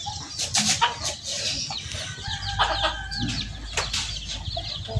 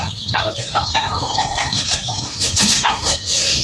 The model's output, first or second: second